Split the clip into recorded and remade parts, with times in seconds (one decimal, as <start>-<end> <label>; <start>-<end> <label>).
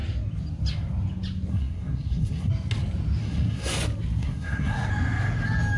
0.0-1.5 recorded; 1.5-2.5 remade; 2.5-3.2 recorded; 3.2-3.8 remade; 3.8-4.2 recorded; 4.2-4.9 remade; 4.9-5.8 recorded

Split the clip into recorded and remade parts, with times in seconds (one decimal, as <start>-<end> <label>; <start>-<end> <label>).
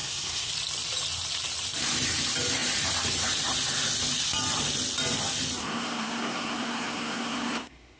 0.0-0.5 remade; 0.5-5.6 recorded; 5.6-8.0 remade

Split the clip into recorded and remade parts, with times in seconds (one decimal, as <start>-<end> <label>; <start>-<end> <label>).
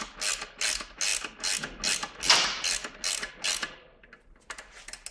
0.0-5.1 recorded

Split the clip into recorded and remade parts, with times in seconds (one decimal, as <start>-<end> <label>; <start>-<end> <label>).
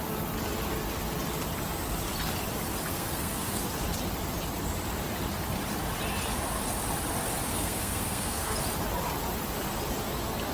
0.0-2.9 recorded; 2.9-3.6 remade; 3.6-7.5 recorded; 7.5-8.5 remade; 8.5-10.5 recorded